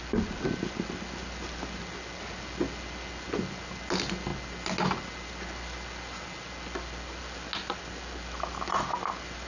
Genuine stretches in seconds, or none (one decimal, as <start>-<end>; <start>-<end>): 0.0-9.5